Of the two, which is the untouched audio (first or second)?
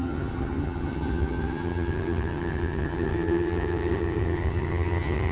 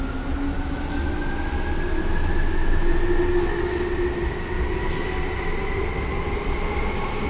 second